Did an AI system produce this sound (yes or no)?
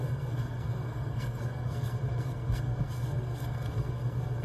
yes